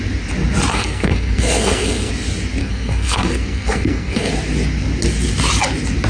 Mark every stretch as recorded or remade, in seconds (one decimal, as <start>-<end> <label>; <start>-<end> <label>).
0.0-0.7 recorded; 0.7-2.1 remade; 2.1-2.6 recorded; 2.6-4.3 remade; 4.3-6.1 recorded